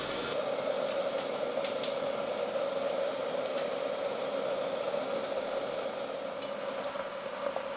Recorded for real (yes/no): yes